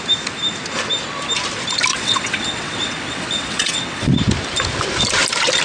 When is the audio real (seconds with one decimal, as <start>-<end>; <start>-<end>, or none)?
0.0-1.9; 4.1-5.6